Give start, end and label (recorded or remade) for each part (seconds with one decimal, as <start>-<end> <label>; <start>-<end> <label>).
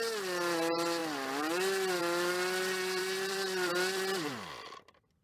0.0-3.0 recorded; 3.0-3.7 remade; 3.7-5.2 recorded